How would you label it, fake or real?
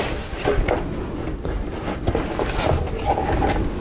real